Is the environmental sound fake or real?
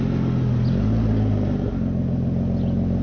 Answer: real